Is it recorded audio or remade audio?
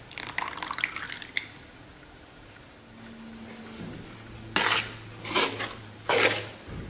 recorded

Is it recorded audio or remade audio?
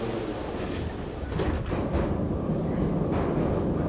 recorded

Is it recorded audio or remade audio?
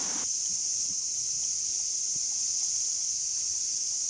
recorded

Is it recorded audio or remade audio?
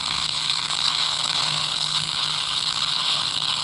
remade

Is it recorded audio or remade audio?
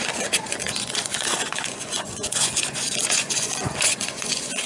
remade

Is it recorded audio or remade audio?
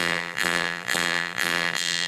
remade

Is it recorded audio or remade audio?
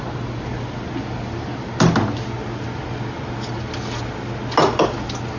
recorded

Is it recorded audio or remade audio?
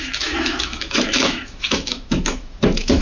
remade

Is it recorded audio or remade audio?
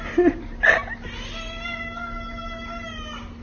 recorded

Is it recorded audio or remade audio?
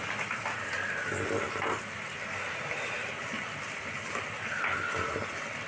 recorded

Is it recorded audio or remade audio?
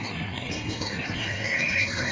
remade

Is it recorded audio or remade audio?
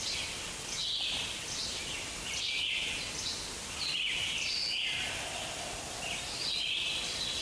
recorded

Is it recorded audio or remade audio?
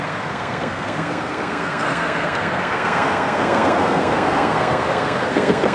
remade